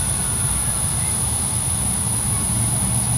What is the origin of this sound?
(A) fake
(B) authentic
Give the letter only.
B